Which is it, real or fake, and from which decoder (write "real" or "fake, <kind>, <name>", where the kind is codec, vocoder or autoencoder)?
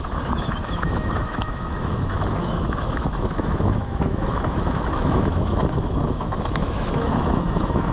fake, autoencoder, DAC-VAE